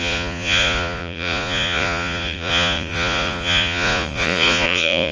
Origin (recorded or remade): remade